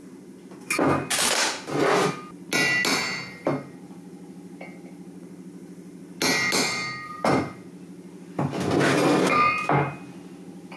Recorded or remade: recorded